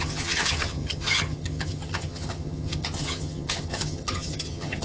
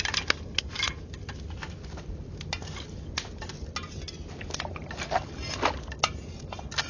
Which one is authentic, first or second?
second